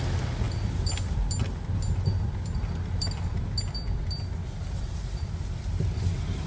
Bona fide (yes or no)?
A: yes